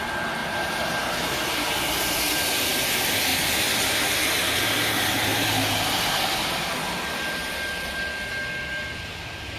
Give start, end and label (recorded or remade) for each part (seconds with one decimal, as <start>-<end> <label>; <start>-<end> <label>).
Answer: 0.0-0.4 recorded; 0.4-1.7 remade; 1.7-5.3 recorded; 5.3-6.7 remade; 6.7-9.6 recorded